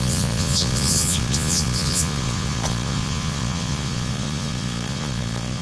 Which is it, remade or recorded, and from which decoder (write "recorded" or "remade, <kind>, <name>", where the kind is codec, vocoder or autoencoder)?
remade, vocoder, Vocos